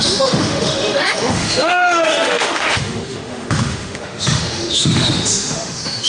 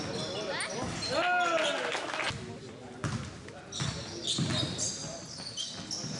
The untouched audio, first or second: second